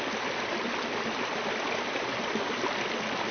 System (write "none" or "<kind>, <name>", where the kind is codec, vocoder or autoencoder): none